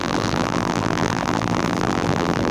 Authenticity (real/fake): fake